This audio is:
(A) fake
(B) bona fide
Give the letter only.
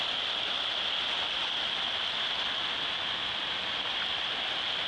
B